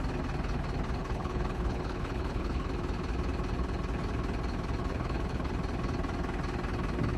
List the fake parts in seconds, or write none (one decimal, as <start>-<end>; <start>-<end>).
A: 1.0-2.7; 4.8-5.5